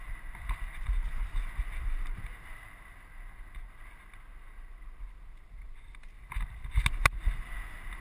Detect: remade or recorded recorded